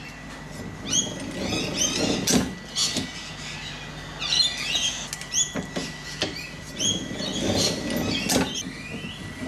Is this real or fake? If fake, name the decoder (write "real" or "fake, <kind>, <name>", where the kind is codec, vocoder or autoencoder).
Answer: real